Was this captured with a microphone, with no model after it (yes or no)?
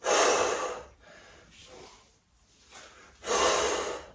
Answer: yes